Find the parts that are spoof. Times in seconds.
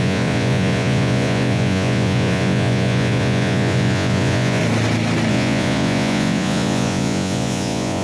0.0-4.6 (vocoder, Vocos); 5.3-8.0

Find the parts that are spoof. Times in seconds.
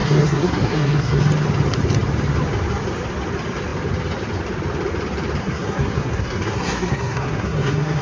0.0-1.2 (codec, SNAC); 5.4-8.0